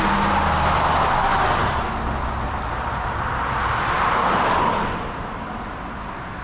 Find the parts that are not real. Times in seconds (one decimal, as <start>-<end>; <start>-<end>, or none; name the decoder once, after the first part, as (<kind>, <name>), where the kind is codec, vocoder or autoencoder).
none